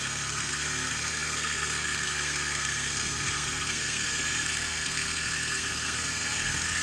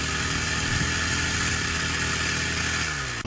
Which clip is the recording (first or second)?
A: second